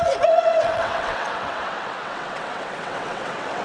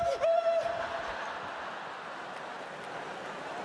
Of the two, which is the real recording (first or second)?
second